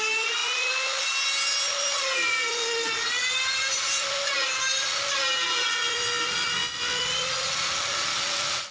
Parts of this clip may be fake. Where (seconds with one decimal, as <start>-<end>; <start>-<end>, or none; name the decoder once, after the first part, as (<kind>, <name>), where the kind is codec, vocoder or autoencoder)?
none